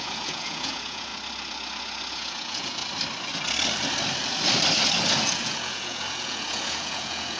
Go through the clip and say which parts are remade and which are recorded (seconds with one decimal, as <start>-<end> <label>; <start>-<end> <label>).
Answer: 0.0-1.1 remade; 1.1-2.1 recorded; 2.1-2.8 remade; 2.8-5.1 recorded; 5.1-7.4 remade